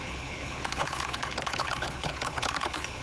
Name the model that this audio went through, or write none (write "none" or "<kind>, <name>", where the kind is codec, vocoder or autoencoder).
codec, HILCodec